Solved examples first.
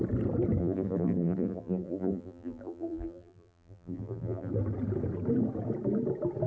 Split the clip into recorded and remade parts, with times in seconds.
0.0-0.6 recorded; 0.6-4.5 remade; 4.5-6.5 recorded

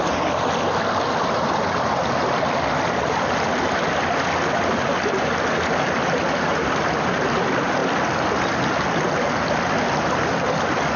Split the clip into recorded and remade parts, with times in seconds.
0.0-11.0 recorded

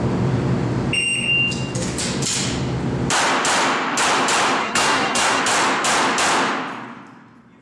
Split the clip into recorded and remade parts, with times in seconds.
0.0-4.6 recorded; 4.6-5.4 remade; 5.4-7.6 recorded

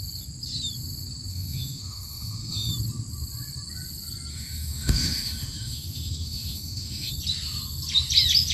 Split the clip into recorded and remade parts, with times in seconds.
0.0-1.3 recorded; 1.3-2.7 remade; 2.7-4.3 recorded; 4.3-7.1 remade; 7.1-8.5 recorded